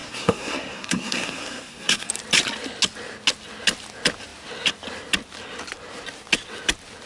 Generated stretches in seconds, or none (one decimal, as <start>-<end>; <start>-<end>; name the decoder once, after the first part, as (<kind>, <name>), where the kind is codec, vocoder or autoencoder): 0.0-2.1 (codec, SNAC)